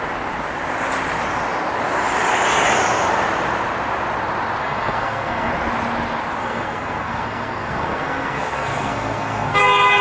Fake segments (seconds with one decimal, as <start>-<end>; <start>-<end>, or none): 4.6-5.5; 6.4-9.6